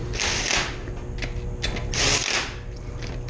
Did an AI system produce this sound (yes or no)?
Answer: no